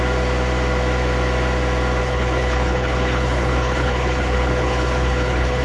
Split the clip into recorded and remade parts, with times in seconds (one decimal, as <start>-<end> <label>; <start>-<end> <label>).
0.0-2.0 recorded; 2.0-5.6 remade